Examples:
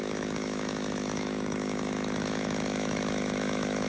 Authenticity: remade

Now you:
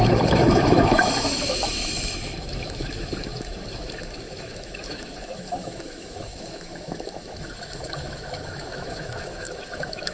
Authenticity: remade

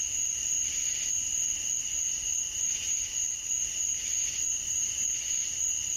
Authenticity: recorded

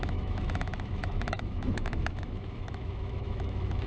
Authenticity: remade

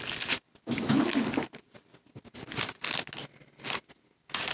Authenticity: recorded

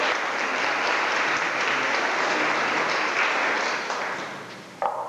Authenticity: recorded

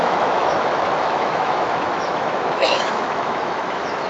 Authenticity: remade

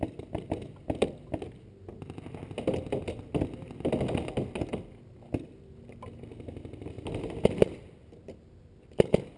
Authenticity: recorded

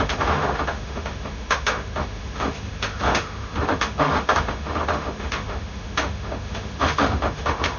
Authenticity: remade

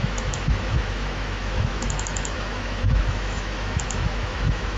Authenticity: remade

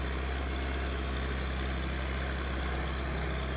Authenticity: recorded